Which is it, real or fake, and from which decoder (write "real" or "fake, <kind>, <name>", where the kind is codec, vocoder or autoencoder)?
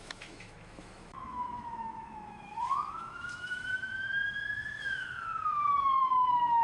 fake, autoencoder, DAC-VAE